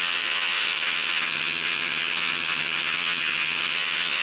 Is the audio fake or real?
fake